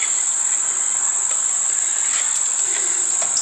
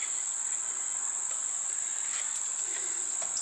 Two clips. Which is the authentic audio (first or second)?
second